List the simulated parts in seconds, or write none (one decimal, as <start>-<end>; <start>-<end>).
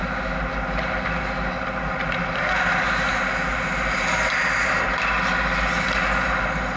none